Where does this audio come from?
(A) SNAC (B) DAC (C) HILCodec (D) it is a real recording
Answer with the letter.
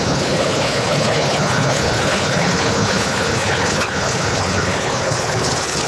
C